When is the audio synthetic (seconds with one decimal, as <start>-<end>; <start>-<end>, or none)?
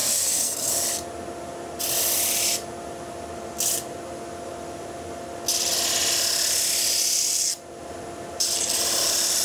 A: 0.0-0.7